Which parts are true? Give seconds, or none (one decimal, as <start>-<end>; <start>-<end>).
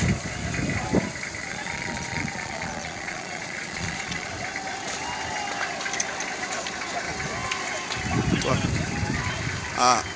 0.0-1.4; 4.3-10.2